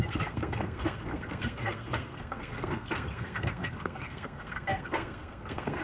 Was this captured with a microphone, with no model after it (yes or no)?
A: no